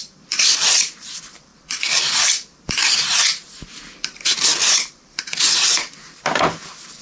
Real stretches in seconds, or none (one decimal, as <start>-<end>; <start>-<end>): none